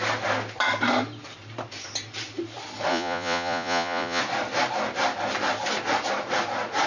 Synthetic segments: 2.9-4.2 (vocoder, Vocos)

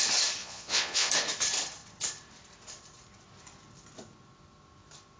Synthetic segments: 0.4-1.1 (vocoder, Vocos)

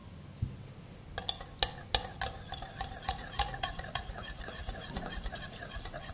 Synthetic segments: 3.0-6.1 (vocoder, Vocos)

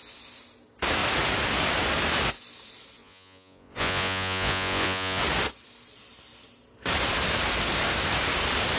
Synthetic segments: 3.0-5.2 (vocoder, Vocos)

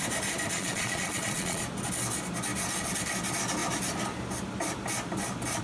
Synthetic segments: 0.5-1.6 (vocoder, Vocos)

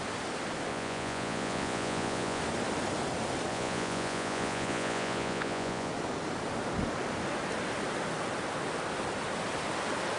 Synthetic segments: 0.7-2.4 (vocoder, Vocos); 3.5-5.9

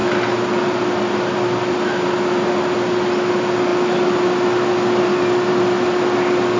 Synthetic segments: none

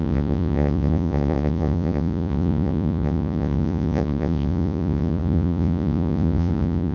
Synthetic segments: 0.0-6.9 (vocoder, Vocos)